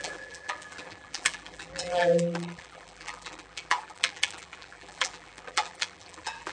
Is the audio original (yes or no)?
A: no